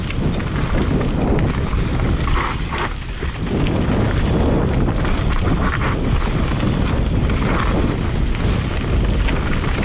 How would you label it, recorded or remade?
recorded